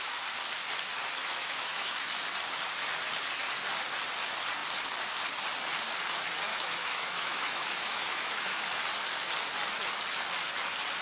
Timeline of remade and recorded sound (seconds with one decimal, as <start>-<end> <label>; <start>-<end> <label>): 0.0-1.2 recorded; 1.2-1.9 remade; 1.9-6.5 recorded; 6.5-8.7 remade; 8.7-11.0 recorded